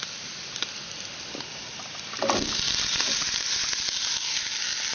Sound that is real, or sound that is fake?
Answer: real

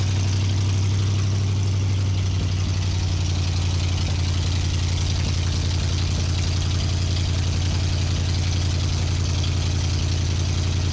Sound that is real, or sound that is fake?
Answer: real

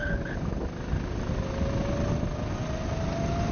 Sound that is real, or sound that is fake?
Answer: real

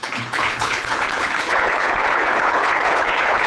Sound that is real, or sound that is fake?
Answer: fake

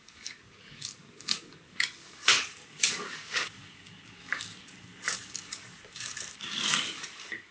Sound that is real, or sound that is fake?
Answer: fake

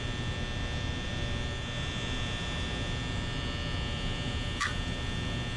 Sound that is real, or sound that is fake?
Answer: real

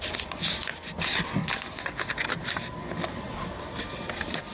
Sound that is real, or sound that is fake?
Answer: real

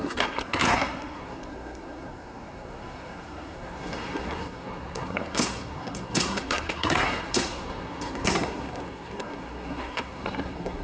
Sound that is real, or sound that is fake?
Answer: fake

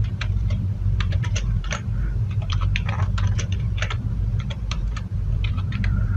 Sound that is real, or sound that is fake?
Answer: fake